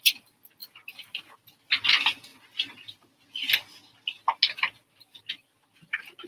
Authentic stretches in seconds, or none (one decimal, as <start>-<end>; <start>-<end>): 0.0-6.3